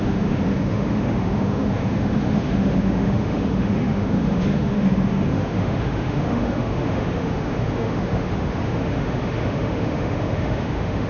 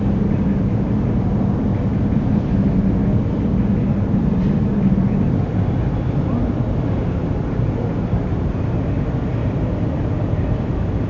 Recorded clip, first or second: second